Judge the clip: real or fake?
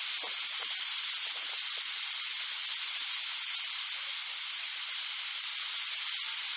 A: real